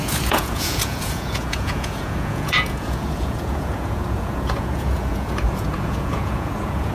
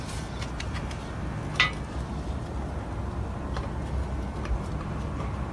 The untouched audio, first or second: second